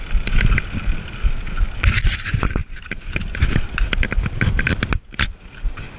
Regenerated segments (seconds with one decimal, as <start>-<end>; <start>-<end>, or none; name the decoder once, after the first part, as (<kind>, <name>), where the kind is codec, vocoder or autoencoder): none